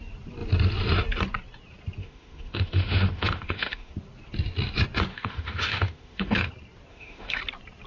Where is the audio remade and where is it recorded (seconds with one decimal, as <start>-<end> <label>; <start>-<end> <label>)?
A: 0.0-2.0 recorded; 2.0-3.9 remade; 3.9-5.1 recorded; 5.1-6.5 remade; 6.5-6.9 recorded; 6.9-7.4 remade; 7.4-7.9 recorded

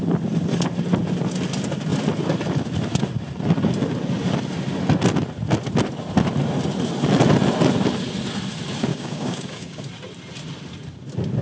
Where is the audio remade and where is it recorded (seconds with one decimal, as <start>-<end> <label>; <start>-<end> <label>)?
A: 0.0-8.9 recorded; 8.9-9.8 remade; 9.8-11.4 recorded